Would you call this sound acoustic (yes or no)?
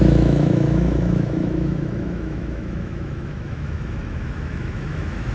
no